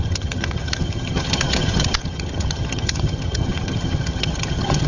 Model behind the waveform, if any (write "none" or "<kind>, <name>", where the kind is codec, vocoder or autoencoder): vocoder, HiFi-GAN